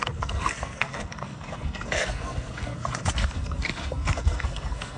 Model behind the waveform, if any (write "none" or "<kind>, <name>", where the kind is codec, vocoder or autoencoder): codec, SNAC